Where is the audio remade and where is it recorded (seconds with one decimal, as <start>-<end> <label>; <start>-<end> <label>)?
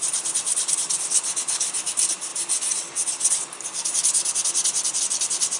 0.0-2.3 remade; 2.3-5.0 recorded; 5.0-5.6 remade